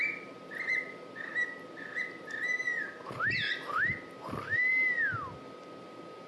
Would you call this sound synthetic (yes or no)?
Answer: no